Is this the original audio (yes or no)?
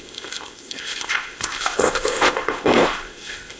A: no